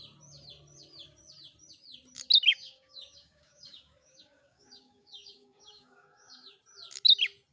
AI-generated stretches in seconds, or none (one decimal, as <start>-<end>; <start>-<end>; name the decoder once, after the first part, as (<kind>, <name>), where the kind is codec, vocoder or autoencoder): 2.5-6.5 (codec, DAC)